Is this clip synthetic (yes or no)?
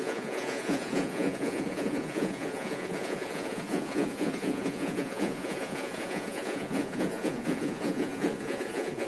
yes